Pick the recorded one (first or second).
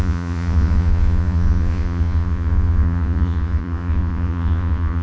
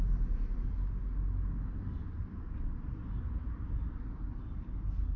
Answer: second